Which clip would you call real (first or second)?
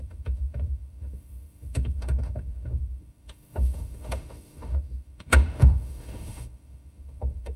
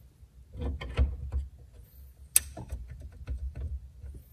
second